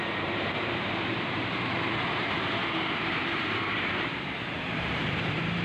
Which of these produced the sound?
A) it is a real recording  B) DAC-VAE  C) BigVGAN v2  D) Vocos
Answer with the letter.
C